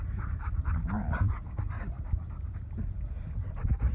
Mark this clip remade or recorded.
recorded